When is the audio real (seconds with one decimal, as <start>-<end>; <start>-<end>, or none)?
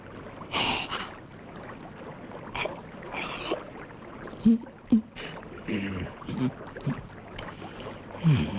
0.0-5.7; 6.3-8.6